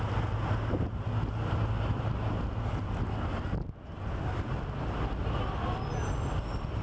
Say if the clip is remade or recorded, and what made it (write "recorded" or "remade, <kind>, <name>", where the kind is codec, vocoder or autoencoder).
recorded